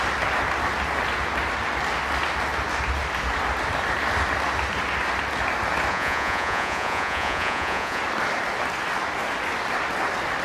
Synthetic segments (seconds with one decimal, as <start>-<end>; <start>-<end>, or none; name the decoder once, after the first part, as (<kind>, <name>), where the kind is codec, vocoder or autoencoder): 5.9-8.0 (vocoder, Vocos)